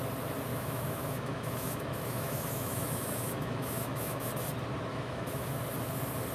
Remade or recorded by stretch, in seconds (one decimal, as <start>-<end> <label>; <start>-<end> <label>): 0.0-0.5 recorded; 0.5-4.3 remade; 4.3-4.9 recorded; 4.9-5.5 remade; 5.5-6.3 recorded